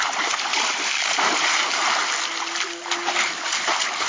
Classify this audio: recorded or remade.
recorded